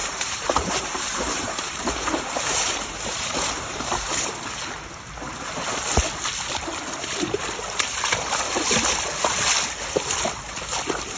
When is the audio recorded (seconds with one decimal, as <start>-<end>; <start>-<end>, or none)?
4.3-11.2